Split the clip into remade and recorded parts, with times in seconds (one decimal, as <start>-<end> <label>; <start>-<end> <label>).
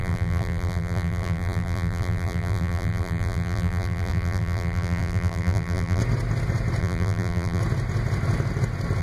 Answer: 0.0-6.0 remade; 6.0-6.8 recorded; 6.8-7.6 remade; 7.6-9.0 recorded